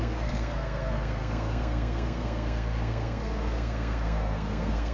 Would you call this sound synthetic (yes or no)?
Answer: yes